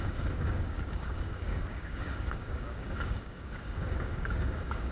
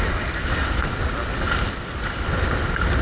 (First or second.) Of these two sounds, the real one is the second